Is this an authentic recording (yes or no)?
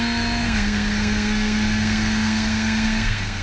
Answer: no